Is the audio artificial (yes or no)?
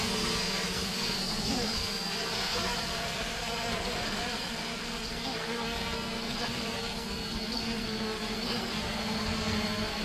yes